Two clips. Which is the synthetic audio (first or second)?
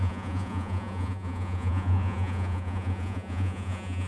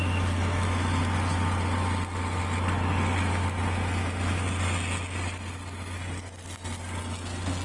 first